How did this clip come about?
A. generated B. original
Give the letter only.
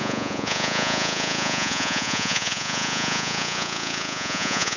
A